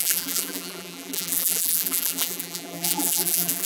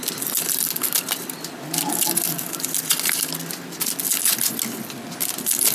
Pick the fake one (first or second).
first